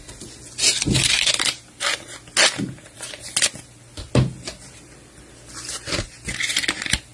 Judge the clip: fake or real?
real